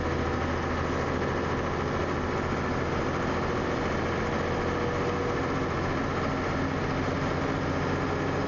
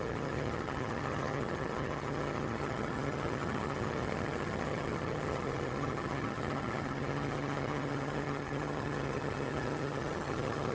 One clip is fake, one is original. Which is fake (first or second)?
second